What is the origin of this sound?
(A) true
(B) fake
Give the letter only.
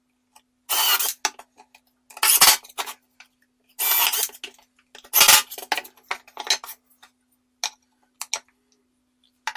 A